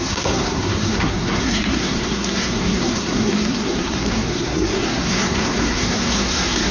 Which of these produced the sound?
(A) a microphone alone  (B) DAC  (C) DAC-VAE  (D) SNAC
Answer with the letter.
D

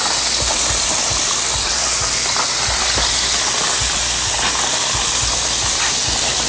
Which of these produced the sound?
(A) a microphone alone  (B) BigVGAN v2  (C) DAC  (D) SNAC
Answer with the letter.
A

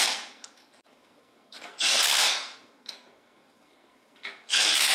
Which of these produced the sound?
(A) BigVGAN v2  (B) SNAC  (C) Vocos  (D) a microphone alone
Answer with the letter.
B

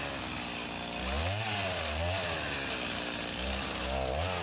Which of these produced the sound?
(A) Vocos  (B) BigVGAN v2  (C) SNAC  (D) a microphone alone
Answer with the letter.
D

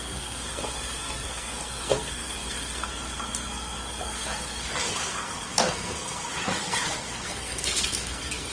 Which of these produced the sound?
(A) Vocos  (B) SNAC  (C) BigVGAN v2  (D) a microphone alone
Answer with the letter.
B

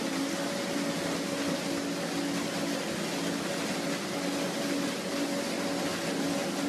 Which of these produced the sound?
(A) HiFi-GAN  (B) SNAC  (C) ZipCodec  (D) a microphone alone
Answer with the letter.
D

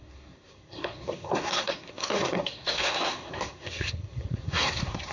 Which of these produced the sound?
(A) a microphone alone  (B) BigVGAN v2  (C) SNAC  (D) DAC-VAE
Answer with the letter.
C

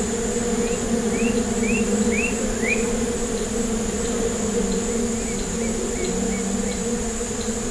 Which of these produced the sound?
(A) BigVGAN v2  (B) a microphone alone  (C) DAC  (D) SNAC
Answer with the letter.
B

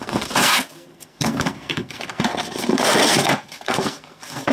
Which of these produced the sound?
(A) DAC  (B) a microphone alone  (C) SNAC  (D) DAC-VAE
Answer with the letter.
C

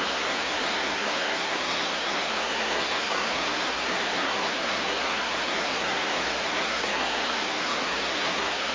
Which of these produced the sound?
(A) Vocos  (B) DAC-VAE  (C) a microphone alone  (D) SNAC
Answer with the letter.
D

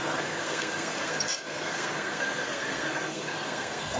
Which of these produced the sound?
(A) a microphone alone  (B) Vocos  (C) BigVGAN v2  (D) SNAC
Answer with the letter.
D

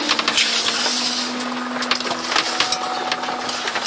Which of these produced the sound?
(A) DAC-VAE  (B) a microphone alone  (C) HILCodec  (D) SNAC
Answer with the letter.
B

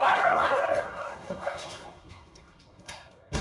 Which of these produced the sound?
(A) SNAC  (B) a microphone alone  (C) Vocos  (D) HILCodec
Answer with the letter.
A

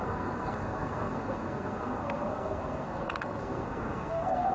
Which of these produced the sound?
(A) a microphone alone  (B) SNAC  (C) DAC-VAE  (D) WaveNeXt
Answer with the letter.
B